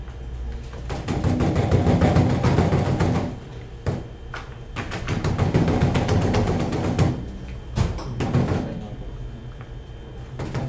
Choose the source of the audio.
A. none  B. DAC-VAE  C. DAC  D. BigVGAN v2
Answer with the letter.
A